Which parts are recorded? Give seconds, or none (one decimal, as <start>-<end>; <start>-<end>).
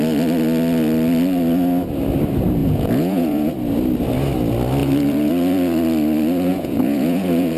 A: 0.0-2.6; 3.5-4.8; 5.3-6.5